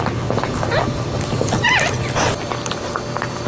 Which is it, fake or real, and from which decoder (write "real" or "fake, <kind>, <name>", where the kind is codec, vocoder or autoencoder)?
real